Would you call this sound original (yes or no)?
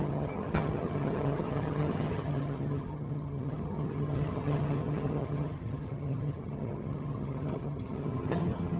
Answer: no